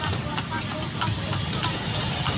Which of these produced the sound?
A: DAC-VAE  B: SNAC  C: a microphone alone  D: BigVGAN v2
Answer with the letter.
C